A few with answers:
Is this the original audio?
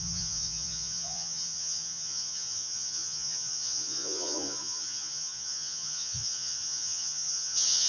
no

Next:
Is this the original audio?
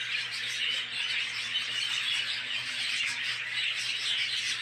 yes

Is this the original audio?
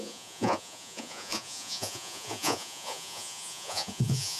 no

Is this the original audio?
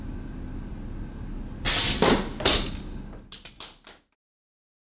yes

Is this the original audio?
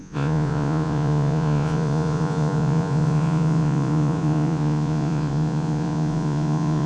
no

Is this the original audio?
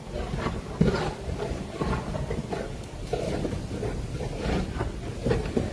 yes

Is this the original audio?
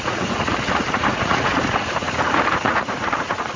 no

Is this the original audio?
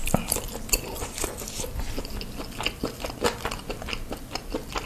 yes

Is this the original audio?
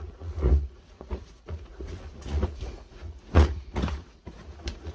no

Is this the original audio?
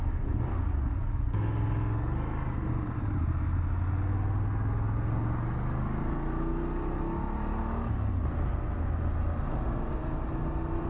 yes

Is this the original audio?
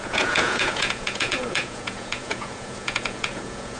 no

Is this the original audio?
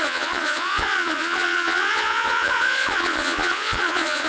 no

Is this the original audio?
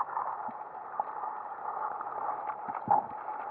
yes